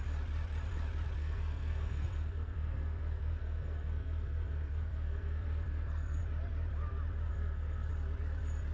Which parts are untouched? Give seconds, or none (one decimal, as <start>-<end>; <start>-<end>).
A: 0.0-1.2; 6.2-7.3; 7.9-8.7